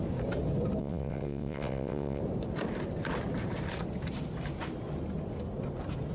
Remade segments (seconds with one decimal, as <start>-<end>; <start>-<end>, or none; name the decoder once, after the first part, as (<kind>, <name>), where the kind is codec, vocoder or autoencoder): 0.8-2.2 (vocoder, WaveNeXt)